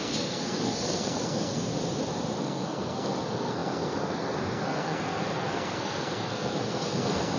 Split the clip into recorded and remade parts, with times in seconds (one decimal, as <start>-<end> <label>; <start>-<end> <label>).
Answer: 0.0-1.7 remade; 1.7-2.4 recorded; 2.4-7.4 remade